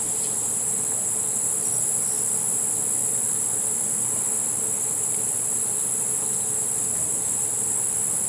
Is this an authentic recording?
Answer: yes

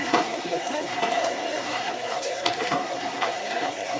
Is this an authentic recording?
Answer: no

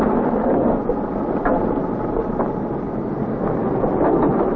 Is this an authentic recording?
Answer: yes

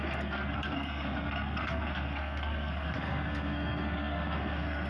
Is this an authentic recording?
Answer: no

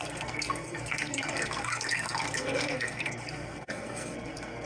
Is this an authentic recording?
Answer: no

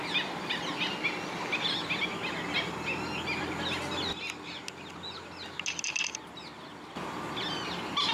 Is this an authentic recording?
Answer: yes